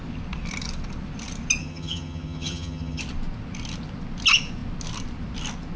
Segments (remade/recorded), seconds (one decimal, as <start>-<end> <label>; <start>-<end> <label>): 0.0-1.6 recorded; 1.6-3.0 remade; 3.0-5.8 recorded